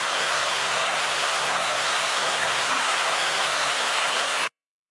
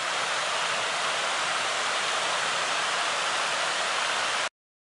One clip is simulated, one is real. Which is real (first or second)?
second